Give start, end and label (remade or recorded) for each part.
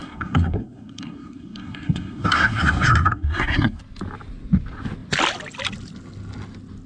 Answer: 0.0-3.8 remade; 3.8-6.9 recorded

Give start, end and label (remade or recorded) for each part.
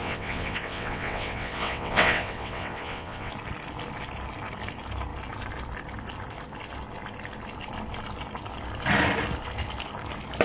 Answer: 0.0-3.3 remade; 3.3-10.4 recorded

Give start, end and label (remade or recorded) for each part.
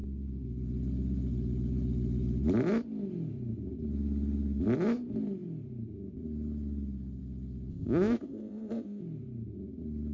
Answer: 0.0-7.7 recorded; 7.7-9.0 remade; 9.0-10.1 recorded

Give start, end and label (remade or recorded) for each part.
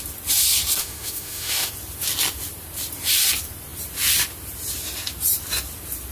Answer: 0.0-0.8 recorded; 0.8-1.7 remade; 1.7-6.1 recorded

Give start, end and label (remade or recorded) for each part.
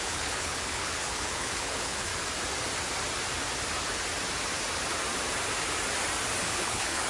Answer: 0.0-2.1 remade; 2.1-6.4 recorded; 6.4-7.1 remade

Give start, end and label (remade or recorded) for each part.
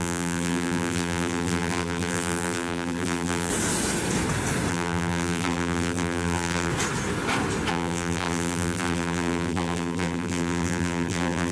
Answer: 0.0-3.5 remade; 3.5-4.7 recorded; 4.7-6.7 remade; 6.7-7.7 recorded; 7.7-11.5 remade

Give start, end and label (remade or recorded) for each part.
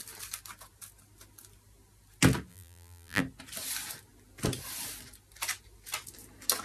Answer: 0.0-2.5 recorded; 2.5-3.2 remade; 3.2-6.6 recorded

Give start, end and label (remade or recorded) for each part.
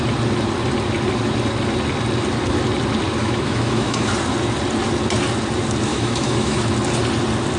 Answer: 0.0-3.2 recorded; 3.2-4.1 remade; 4.1-5.9 recorded; 5.9-6.7 remade; 6.7-7.6 recorded